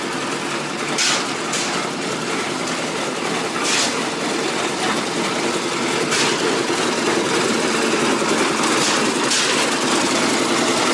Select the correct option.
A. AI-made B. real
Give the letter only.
B